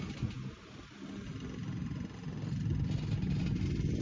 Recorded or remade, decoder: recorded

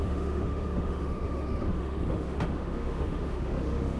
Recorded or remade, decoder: remade, autoencoder, DAC-VAE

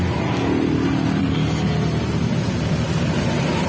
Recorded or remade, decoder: recorded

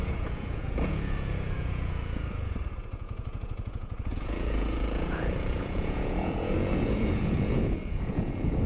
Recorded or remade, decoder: remade, vocoder, Vocos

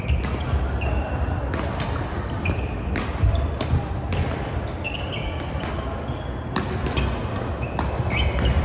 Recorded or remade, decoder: recorded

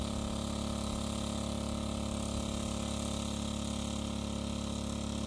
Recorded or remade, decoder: recorded